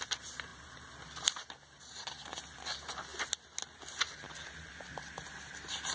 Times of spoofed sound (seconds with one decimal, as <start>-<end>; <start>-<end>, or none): none